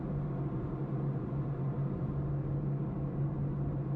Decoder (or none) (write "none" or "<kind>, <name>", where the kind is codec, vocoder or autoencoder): none